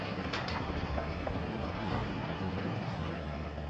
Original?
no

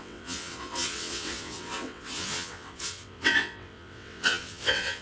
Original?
no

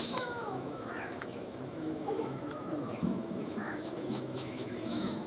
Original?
no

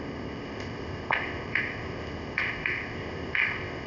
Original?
no